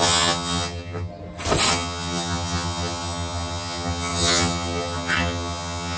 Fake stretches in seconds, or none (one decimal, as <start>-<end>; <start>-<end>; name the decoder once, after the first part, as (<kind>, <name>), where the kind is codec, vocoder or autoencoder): 0.0-1.1 (vocoder, HiFi-GAN); 1.7-6.0